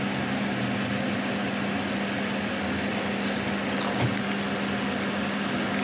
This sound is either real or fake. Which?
real